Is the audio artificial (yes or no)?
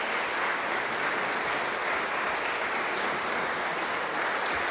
no